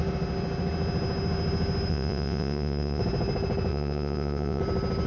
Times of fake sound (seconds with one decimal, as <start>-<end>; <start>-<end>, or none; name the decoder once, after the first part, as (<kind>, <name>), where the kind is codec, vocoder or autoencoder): 1.9-3.0 (vocoder, Vocos); 3.7-4.6